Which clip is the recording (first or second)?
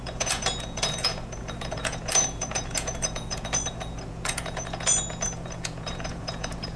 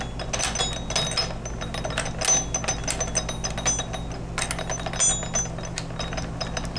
second